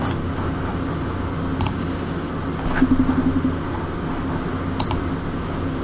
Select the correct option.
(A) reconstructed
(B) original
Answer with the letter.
B